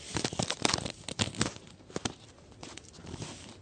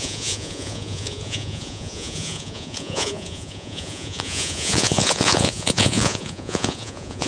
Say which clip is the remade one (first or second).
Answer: second